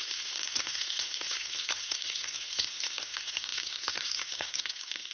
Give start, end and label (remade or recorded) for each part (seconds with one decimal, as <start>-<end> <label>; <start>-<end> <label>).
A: 0.0-5.1 remade

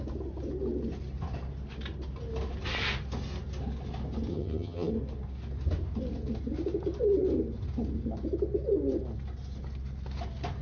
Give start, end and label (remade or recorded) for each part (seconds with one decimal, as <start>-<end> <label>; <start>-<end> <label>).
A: 0.0-4.3 recorded; 4.3-4.9 remade; 4.9-10.6 recorded